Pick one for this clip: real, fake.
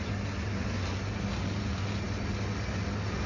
real